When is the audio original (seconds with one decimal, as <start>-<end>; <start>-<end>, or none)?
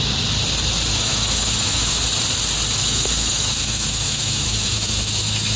0.0-0.9; 2.0-2.8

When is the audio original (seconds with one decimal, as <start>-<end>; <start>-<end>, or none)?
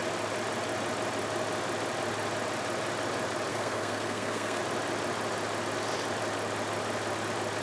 0.0-3.5; 4.6-7.6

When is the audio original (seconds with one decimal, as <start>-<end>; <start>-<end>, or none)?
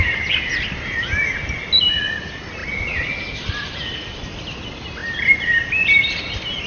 0.0-6.7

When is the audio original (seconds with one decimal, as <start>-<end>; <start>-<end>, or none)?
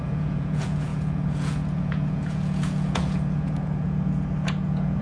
none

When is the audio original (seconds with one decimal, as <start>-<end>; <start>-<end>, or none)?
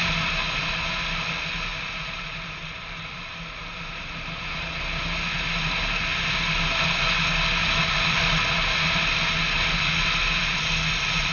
0.0-1.7; 4.5-7.6; 8.3-11.3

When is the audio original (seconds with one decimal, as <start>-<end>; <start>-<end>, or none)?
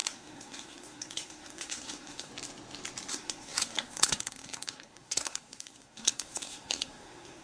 2.3-3.1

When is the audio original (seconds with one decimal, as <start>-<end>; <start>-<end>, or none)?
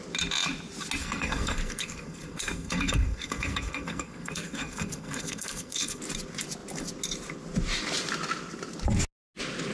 0.0-1.0; 6.0-9.7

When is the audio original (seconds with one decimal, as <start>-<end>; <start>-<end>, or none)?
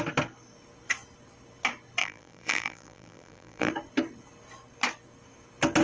0.0-2.0; 3.7-5.8